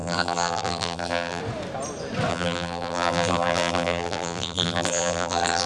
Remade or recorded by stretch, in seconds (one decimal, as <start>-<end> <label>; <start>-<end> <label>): 0.0-1.4 remade; 1.4-2.3 recorded; 2.3-5.7 remade

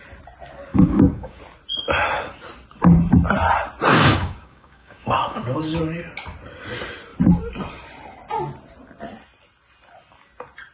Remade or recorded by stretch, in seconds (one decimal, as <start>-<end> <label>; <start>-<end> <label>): 0.0-0.7 recorded; 0.7-1.4 remade; 1.4-3.9 recorded; 3.9-5.8 remade; 5.8-10.7 recorded

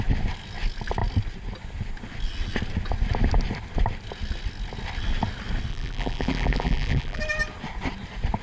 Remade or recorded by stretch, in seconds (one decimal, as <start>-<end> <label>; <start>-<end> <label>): 0.0-5.7 recorded; 5.7-7.2 remade; 7.2-8.4 recorded